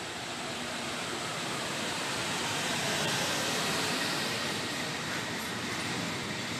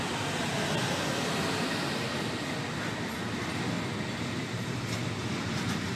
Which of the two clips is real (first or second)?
second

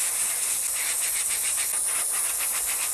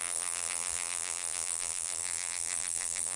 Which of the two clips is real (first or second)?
first